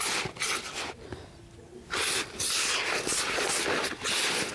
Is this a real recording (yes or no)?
yes